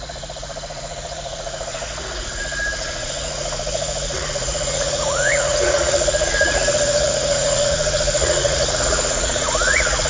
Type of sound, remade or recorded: remade